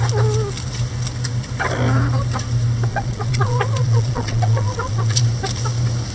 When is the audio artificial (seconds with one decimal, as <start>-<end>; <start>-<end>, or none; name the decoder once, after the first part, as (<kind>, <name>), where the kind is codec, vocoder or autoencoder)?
2.9-5.2 (vocoder, Vocos)